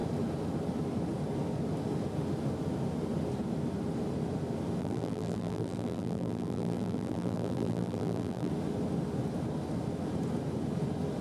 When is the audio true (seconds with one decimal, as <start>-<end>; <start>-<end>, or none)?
0.0-4.8; 8.5-11.2